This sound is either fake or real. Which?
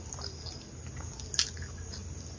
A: real